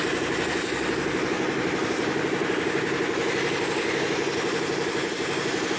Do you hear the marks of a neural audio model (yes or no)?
no